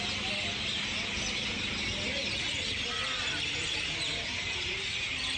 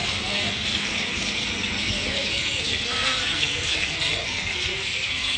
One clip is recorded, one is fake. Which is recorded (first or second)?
first